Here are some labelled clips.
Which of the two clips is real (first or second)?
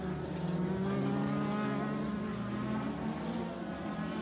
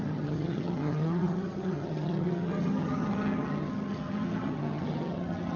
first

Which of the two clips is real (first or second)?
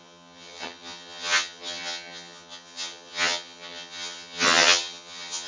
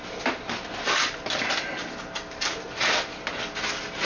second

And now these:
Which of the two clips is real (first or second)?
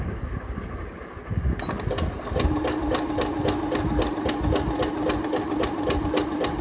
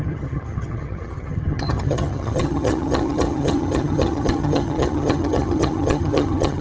first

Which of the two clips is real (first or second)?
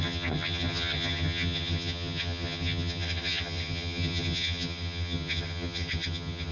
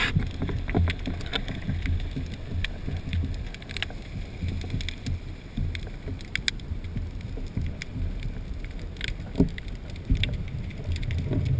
second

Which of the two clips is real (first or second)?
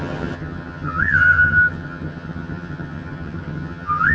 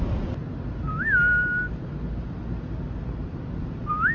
second